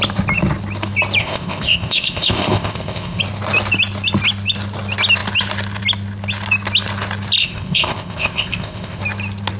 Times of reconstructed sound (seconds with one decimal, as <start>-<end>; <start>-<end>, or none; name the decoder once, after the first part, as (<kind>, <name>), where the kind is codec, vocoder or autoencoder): 1.2-3.2 (codec, ZipCodec); 7.4-9.0